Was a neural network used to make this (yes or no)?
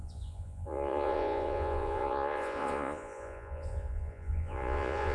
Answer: yes